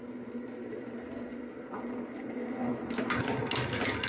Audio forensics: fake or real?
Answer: real